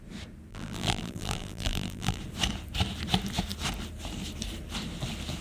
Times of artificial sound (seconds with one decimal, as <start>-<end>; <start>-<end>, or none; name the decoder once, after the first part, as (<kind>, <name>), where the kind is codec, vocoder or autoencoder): 0.5-2.2 (vocoder, BigVGAN v2)